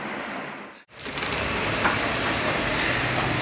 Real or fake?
real